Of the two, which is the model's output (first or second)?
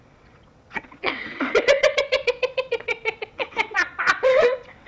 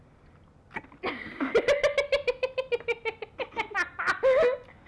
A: first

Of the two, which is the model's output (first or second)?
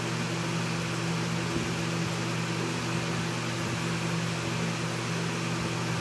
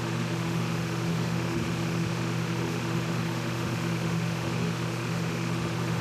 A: second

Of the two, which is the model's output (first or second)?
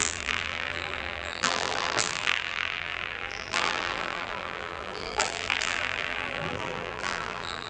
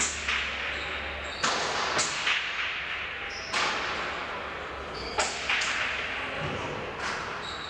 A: first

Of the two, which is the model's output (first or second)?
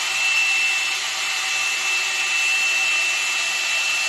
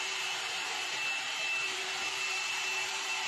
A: second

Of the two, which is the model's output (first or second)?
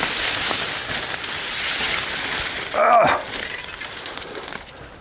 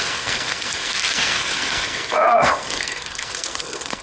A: second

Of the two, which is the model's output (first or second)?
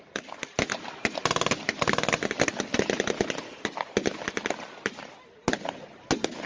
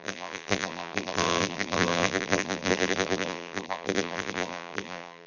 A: second